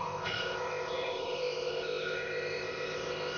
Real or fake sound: fake